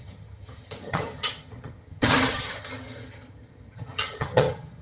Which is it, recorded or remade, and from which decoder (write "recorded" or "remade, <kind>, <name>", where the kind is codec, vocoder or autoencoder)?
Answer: remade, vocoder, HiFi-GAN